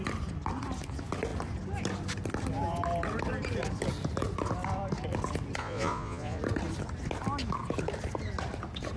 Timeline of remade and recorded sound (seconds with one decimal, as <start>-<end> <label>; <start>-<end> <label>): 0.0-5.6 recorded; 5.6-6.4 remade; 6.4-9.0 recorded